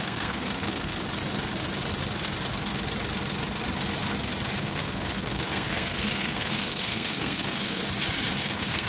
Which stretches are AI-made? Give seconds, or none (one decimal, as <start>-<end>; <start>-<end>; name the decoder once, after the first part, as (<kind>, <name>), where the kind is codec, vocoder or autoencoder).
0.0-0.9 (codec, SNAC); 4.6-7.8; 8.4-8.9